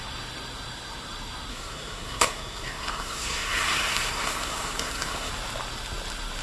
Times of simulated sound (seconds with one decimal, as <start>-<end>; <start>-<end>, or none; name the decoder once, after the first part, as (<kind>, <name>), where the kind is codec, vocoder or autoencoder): 1.5-5.3 (codec, SNAC)